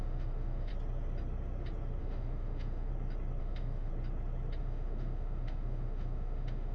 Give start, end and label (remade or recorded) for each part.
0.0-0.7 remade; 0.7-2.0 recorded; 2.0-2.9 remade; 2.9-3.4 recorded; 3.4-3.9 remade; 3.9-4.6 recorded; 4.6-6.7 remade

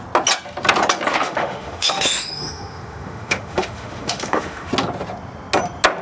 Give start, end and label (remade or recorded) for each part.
0.0-1.1 recorded; 1.1-4.7 remade; 4.7-6.0 recorded

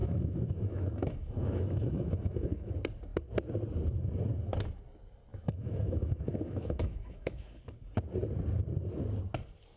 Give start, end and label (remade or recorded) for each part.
0.0-2.7 remade; 2.7-5.3 recorded; 5.3-7.6 remade; 7.6-9.8 recorded

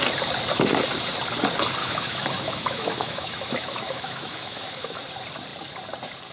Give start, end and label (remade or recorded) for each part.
0.0-1.8 recorded; 1.8-5.0 remade; 5.0-6.3 recorded